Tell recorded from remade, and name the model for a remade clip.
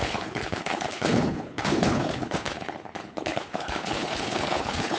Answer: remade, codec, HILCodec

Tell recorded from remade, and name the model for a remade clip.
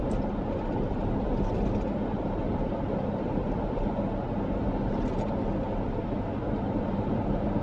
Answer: recorded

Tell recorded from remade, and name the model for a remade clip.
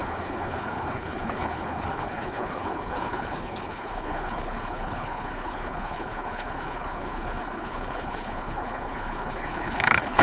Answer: remade, codec, HILCodec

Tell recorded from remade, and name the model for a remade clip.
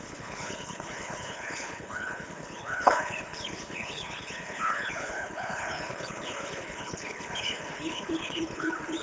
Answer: remade, codec, HILCodec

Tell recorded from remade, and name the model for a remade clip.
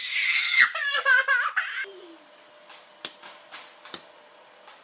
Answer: recorded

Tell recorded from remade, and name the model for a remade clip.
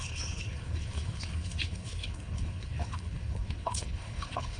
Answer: remade, codec, HILCodec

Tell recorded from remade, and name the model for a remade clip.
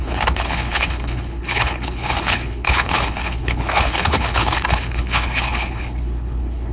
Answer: remade, codec, HILCodec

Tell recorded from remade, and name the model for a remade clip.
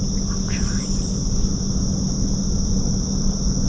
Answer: recorded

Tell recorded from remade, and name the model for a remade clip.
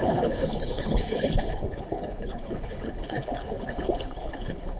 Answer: remade, codec, HILCodec